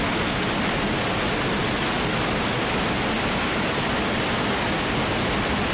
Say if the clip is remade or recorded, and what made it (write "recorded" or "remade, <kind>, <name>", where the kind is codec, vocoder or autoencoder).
recorded